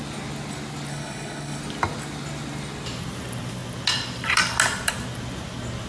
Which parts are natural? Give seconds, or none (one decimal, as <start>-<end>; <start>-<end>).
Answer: 0.0-0.9; 1.6-5.9